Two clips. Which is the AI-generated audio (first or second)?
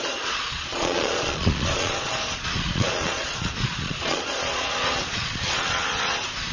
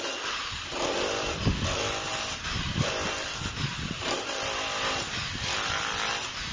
first